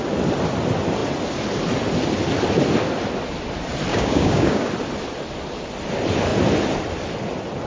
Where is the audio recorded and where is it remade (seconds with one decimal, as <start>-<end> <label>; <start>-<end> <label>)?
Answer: 0.0-3.9 recorded; 3.9-4.7 remade; 4.7-7.7 recorded